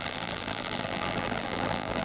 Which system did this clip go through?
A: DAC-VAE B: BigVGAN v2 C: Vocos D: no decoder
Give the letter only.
B